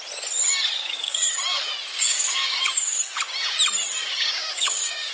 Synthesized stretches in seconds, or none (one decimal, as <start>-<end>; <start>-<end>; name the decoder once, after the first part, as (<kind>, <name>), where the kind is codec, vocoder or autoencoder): 0.8-1.3 (codec, DAC); 1.9-3.2; 4.0-5.1